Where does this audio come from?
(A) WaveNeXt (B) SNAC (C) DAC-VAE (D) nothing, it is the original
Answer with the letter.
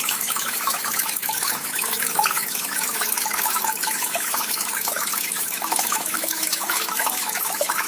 C